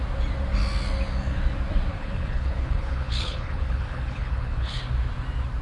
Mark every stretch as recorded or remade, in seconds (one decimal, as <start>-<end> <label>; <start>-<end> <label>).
0.0-1.9 recorded; 1.9-4.8 remade; 4.8-5.6 recorded